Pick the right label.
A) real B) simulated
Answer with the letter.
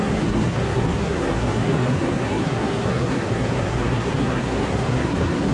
B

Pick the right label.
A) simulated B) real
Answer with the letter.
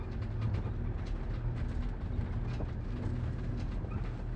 B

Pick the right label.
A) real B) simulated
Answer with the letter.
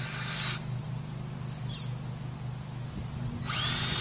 A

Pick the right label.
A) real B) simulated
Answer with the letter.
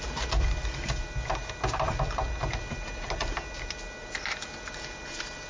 A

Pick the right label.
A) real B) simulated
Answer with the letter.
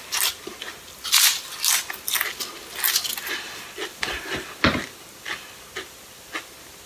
A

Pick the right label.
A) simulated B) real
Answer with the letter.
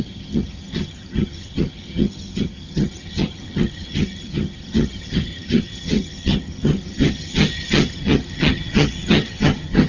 A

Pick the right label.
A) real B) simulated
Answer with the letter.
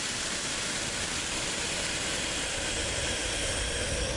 B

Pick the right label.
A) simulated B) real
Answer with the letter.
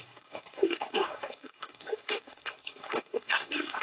A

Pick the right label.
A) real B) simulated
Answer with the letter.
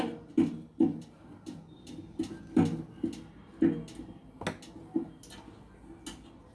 A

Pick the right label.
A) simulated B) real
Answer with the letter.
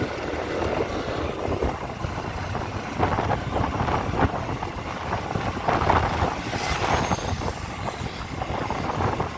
B